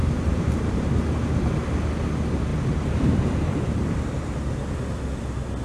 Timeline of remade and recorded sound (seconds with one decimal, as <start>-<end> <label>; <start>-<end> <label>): 0.0-0.9 remade; 0.9-2.5 recorded; 2.5-4.6 remade; 4.6-5.6 recorded